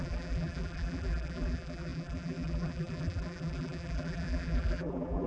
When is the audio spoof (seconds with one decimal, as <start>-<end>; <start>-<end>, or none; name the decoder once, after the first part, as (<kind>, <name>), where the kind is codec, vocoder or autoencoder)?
0.0-5.3 (vocoder, BigVGAN v2)